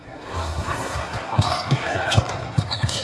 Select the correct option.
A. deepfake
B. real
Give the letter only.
A